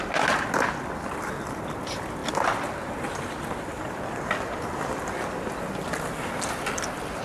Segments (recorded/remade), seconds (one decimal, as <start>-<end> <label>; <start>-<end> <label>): 0.0-7.2 recorded